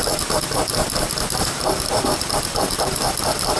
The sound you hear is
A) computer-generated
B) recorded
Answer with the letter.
B